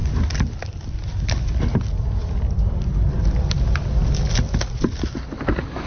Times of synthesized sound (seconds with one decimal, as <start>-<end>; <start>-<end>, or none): none